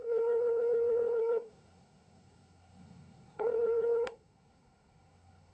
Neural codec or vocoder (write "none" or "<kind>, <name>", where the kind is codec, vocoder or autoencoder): codec, SNAC